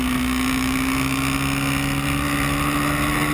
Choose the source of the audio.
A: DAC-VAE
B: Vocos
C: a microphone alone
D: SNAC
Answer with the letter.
C